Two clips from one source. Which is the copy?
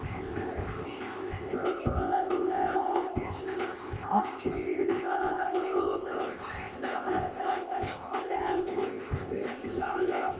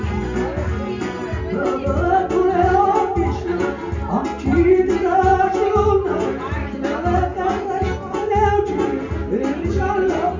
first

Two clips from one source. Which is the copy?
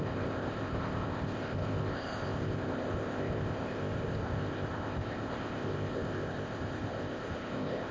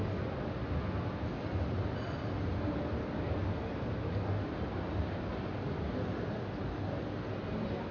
first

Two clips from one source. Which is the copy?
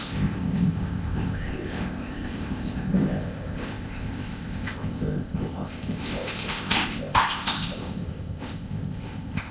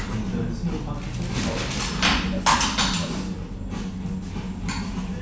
first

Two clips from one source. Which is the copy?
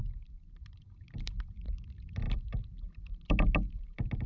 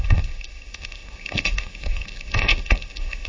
second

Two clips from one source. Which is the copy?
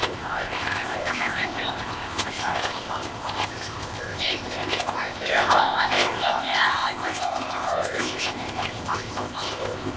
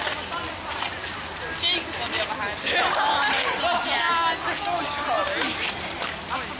first